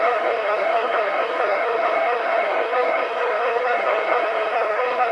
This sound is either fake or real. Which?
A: fake